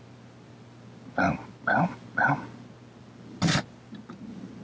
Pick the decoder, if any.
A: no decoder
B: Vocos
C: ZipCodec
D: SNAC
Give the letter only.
A